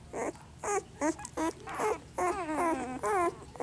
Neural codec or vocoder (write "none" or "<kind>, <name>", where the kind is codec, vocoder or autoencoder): none